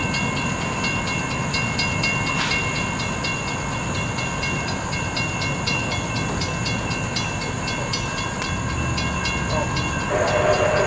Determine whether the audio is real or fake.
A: real